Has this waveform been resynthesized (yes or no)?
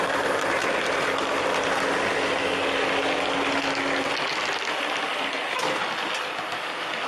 no